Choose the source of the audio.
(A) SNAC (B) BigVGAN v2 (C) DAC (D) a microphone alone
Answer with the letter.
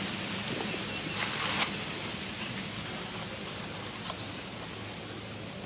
D